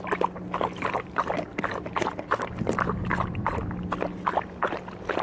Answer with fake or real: real